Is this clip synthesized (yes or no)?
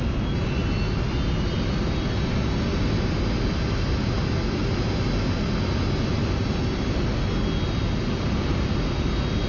no